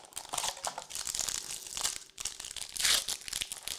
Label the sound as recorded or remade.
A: recorded